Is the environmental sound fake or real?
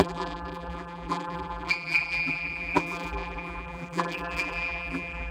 fake